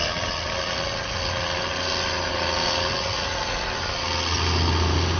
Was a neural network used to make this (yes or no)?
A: no